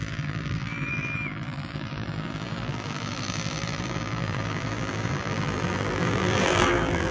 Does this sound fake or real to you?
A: fake